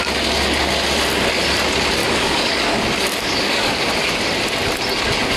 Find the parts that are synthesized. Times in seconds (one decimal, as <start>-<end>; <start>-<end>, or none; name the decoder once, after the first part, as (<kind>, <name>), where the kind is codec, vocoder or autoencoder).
2.0-3.9 (codec, DAC)